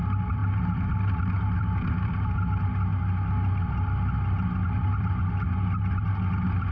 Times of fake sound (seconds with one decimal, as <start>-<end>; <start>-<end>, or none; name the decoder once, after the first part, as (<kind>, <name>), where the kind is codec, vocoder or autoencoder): none